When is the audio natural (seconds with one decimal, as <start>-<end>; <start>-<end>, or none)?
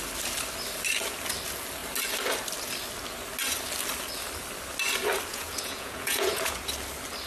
0.0-5.3; 6.6-7.3